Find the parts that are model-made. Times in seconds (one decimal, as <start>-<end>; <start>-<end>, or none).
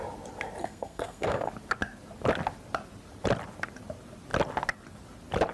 0.6-1.5